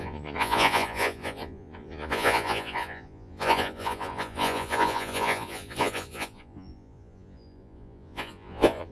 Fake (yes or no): yes